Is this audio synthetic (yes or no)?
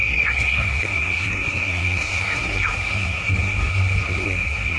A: yes